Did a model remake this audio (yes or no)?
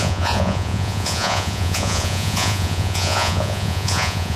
yes